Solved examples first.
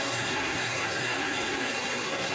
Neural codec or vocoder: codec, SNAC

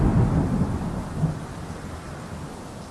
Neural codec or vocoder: none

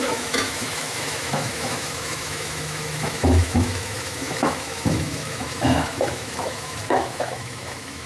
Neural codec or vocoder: autoencoder, DAC-VAE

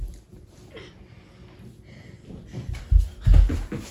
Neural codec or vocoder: none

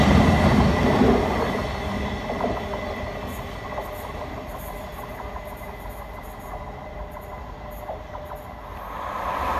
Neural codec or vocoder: none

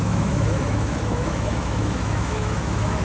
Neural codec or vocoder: autoencoder, DAC-VAE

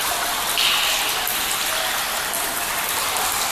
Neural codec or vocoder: none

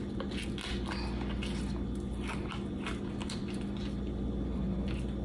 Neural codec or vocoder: none